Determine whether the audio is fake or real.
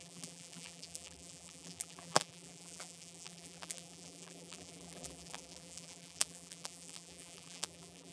fake